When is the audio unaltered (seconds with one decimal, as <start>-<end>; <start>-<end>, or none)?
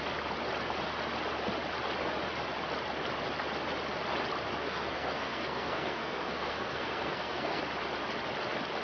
0.0-4.6; 7.6-8.8